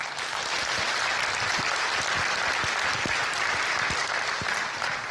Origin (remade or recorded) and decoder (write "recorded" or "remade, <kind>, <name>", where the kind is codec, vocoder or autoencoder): recorded